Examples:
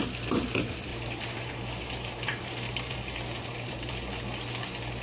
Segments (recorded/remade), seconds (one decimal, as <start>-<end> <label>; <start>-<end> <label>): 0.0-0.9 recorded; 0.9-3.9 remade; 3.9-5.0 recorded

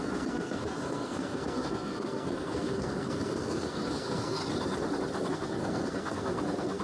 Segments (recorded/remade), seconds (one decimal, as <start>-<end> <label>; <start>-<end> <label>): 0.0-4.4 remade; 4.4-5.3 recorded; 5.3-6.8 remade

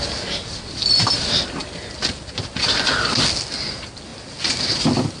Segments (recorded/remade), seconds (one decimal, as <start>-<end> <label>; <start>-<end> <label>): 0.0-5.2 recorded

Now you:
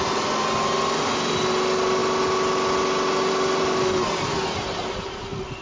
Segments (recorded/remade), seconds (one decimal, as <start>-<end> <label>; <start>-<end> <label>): 0.0-5.6 recorded